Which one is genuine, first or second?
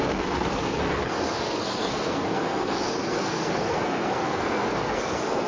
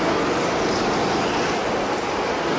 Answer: second